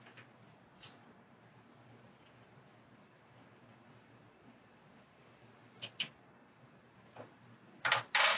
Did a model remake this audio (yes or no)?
no